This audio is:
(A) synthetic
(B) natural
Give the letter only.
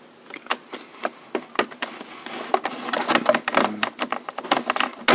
B